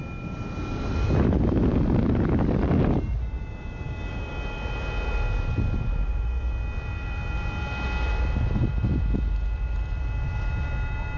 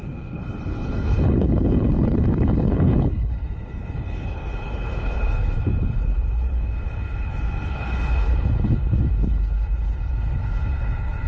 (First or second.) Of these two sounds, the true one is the first